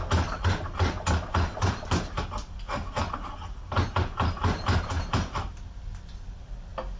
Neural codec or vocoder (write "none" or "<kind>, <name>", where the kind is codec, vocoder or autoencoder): none